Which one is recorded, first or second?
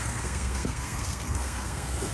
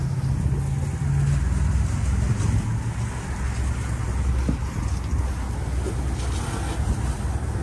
second